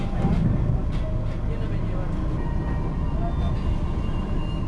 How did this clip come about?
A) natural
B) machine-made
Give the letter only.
A